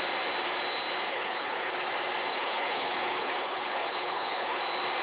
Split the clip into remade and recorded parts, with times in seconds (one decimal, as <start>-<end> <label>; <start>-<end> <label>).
0.0-1.1 recorded; 1.1-1.7 remade; 1.7-2.3 recorded; 2.3-4.6 remade; 4.6-5.0 recorded